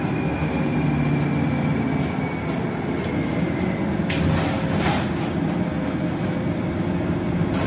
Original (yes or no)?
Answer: yes